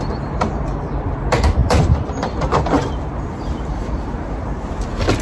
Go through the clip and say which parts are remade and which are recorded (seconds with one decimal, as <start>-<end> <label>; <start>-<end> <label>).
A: 0.0-1.6 recorded; 1.6-4.7 remade; 4.7-5.2 recorded